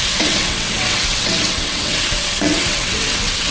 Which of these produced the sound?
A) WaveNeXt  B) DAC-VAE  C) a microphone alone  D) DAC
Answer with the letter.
A